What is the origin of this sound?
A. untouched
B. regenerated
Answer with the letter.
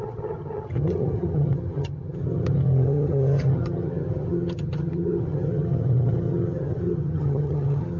B